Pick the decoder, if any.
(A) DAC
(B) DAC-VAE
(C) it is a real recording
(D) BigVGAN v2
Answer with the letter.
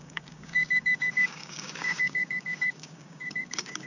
A